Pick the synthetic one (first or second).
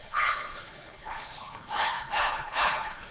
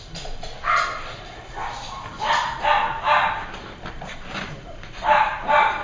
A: first